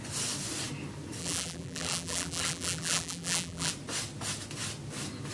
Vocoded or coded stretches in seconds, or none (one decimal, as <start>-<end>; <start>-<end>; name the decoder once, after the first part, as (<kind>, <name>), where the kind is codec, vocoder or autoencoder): 1.2-3.7 (vocoder, BigVGAN v2)